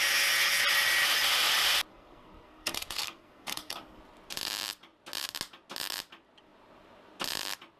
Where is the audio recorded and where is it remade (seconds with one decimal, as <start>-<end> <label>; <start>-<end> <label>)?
0.0-1.9 recorded; 1.9-4.0 remade; 4.0-7.8 recorded